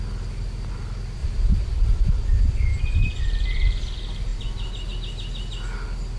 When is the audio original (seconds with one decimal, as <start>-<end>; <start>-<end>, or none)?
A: 0.0-1.2; 2.1-2.7; 3.2-6.2